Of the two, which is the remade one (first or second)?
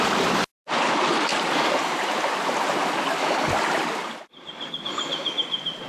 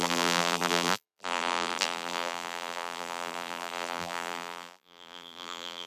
second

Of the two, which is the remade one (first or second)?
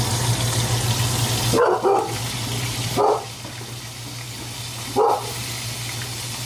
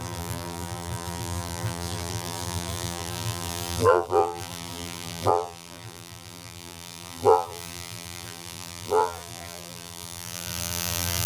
second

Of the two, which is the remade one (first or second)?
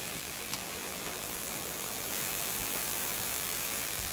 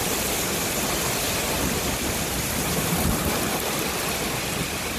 first